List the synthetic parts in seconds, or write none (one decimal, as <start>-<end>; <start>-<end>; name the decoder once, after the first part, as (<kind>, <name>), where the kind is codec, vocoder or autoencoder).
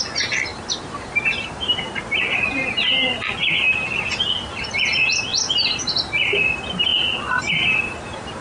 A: 0.5-2.2 (vocoder, BigVGAN v2); 5.3-5.9